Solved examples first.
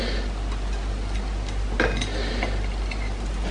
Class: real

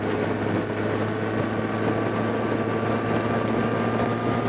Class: real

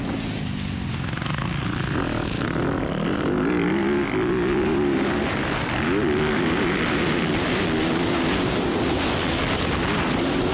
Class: real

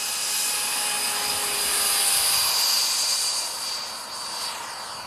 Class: real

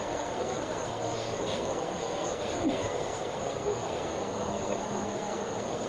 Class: fake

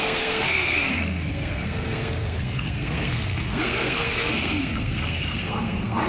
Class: fake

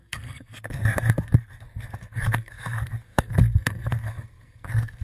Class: fake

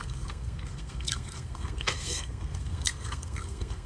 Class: fake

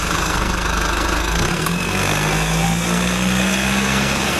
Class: fake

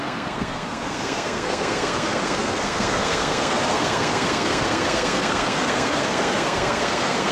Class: fake